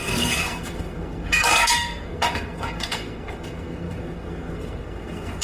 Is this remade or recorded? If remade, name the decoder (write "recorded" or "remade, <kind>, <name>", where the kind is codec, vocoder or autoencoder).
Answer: remade, codec, SNAC